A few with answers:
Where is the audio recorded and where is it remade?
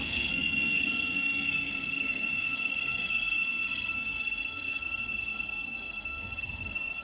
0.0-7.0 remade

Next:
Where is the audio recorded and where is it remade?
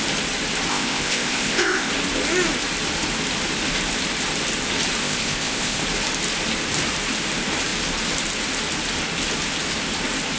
0.0-0.7 recorded; 0.7-1.9 remade; 1.9-5.0 recorded; 5.0-5.8 remade; 5.8-10.4 recorded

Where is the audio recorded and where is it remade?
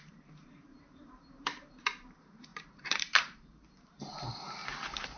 0.0-4.6 remade; 4.6-5.2 recorded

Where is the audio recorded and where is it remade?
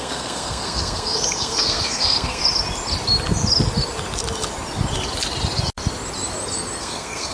0.0-2.4 remade; 2.4-6.8 recorded; 6.8-7.3 remade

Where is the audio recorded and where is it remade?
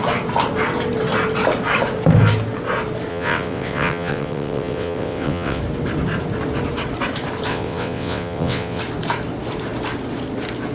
0.0-3.1 recorded; 3.1-5.6 remade; 5.6-7.5 recorded; 7.5-8.8 remade; 8.8-10.7 recorded